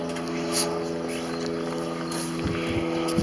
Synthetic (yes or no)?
no